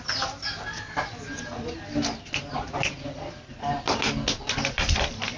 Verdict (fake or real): real